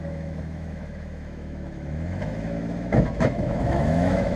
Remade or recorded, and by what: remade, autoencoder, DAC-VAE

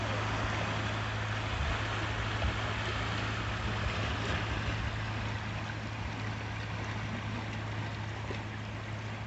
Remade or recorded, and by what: recorded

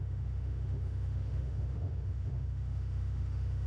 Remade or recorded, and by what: remade, autoencoder, DAC-VAE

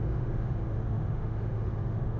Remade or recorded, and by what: remade, autoencoder, DAC-VAE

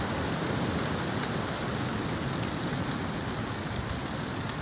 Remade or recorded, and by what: recorded